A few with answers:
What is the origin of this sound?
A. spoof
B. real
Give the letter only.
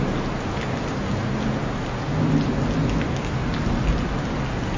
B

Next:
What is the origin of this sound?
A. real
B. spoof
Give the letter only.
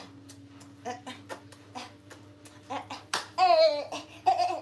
A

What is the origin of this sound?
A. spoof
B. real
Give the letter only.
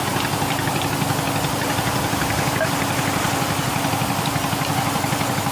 B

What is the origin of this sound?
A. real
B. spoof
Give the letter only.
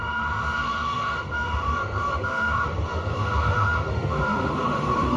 B